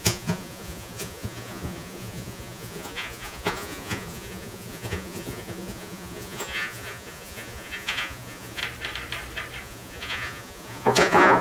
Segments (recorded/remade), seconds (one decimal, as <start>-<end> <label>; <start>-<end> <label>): 0.0-8.6 remade; 8.6-9.6 recorded; 9.6-11.4 remade